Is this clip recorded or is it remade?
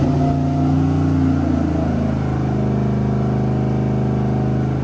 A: recorded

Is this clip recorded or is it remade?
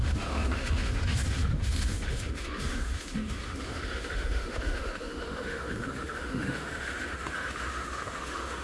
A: remade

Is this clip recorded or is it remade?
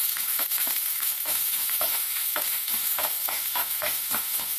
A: remade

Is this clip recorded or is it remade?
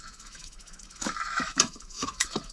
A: remade